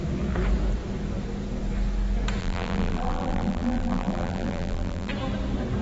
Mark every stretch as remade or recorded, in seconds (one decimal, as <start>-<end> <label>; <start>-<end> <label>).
0.0-2.4 recorded; 2.4-5.1 remade; 5.1-5.8 recorded